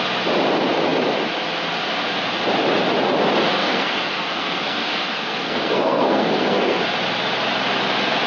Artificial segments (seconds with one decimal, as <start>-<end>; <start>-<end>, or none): 3.6-6.8

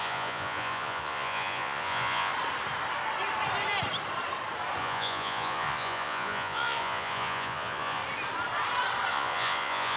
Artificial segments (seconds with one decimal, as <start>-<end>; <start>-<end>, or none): 0.0-2.3; 4.8-8.0; 9.1-10.0

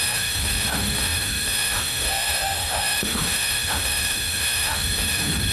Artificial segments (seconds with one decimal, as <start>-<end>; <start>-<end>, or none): 0.0-5.5

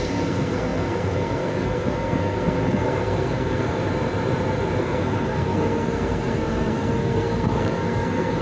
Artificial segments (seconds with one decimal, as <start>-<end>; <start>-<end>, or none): 0.0-3.8; 4.8-8.4